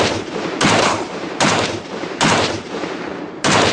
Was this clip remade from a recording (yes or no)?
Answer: yes